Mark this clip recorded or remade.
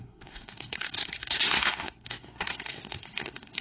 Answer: remade